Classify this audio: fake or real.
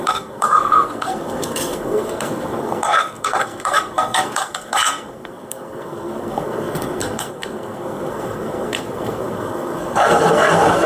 fake